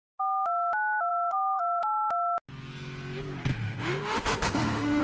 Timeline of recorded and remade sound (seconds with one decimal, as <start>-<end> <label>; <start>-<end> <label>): 0.0-1.1 recorded; 1.1-1.8 remade; 1.8-3.5 recorded; 3.5-5.0 remade

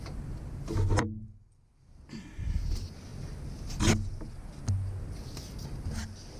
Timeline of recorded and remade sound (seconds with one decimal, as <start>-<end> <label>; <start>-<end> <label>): 0.0-6.4 recorded

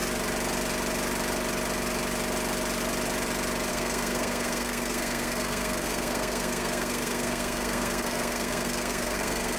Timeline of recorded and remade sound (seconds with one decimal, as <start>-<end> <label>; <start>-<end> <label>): 0.0-3.7 recorded; 3.7-9.6 remade

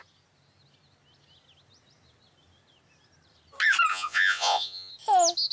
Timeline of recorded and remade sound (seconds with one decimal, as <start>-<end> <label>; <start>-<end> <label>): 0.0-3.9 recorded; 3.9-4.9 remade; 4.9-5.5 recorded

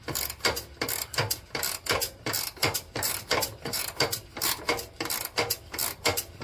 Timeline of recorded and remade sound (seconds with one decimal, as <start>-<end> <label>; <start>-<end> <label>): 0.0-2.6 recorded; 2.6-4.7 remade; 4.7-6.4 recorded

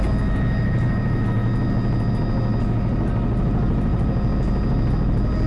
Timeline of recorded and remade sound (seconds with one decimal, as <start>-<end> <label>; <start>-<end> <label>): 0.0-5.5 recorded

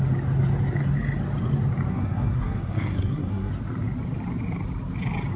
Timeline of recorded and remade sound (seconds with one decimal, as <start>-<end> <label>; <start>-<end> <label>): 0.0-1.9 recorded; 1.9-3.5 remade; 3.5-5.4 recorded